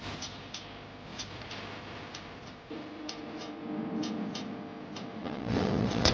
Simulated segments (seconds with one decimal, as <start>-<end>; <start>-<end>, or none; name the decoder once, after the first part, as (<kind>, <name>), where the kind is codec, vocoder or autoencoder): 5.2-6.1 (vocoder, WaveNeXt)

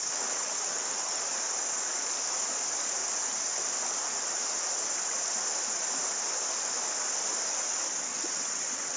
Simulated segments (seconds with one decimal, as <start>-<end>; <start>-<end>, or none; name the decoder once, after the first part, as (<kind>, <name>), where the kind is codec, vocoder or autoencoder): 0.0-1.2 (vocoder, WaveNeXt); 8.1-9.0

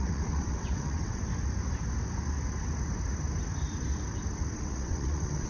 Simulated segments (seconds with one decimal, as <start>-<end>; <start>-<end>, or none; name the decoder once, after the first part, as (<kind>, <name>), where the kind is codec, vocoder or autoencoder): 0.0-1.2 (vocoder, WaveNeXt); 4.5-5.5